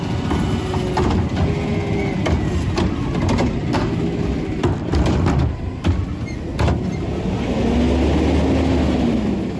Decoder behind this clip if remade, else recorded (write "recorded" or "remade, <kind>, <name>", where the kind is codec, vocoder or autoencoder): recorded